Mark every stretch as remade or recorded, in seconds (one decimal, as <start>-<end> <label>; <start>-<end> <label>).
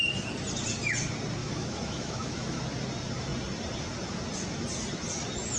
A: 0.0-1.4 recorded; 1.4-2.6 remade; 2.6-5.6 recorded